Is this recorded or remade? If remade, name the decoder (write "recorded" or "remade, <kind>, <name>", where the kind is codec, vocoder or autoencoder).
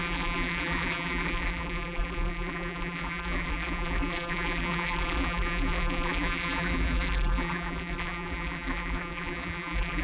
remade, vocoder, BigVGAN v2